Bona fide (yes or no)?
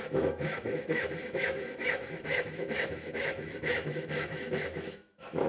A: no